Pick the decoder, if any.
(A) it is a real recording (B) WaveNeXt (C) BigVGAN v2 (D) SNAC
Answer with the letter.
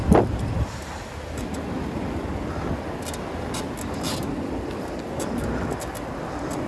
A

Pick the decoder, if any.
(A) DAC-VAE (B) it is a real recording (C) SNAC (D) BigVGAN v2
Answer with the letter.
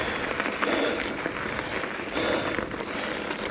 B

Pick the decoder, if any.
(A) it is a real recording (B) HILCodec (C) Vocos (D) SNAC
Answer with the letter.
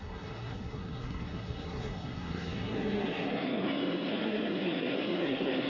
D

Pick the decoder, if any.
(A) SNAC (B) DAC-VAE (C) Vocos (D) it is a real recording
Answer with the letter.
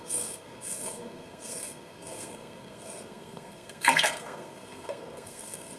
A